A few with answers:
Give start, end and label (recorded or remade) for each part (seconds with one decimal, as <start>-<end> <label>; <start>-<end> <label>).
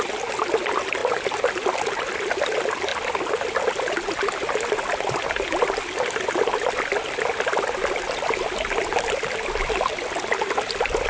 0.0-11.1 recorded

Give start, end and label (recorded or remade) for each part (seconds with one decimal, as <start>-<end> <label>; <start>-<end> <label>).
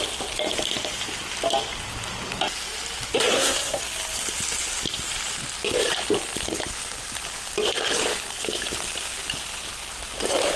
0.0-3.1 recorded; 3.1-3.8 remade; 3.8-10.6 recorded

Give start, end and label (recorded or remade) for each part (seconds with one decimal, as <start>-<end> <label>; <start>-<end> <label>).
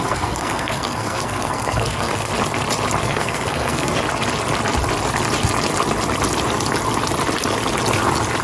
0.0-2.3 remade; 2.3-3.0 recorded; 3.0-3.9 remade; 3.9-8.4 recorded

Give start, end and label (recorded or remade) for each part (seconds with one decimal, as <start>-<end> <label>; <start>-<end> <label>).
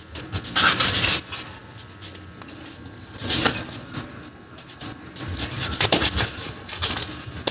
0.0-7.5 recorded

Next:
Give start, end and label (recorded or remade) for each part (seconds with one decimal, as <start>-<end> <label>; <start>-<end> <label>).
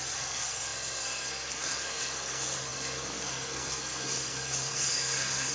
0.0-5.5 remade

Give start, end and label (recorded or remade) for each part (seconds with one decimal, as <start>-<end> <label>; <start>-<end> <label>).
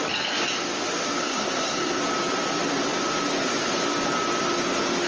0.0-1.2 recorded; 1.2-2.0 remade; 2.0-5.1 recorded